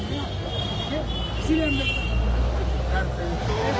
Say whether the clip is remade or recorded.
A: recorded